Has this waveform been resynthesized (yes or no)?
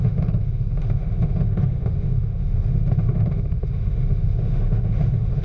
yes